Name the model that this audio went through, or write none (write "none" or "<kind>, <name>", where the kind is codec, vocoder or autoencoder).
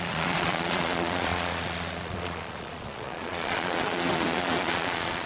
vocoder, Vocos